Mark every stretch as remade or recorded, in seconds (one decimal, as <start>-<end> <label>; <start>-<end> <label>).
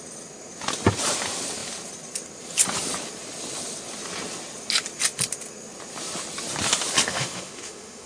0.0-7.1 recorded; 7.1-8.1 remade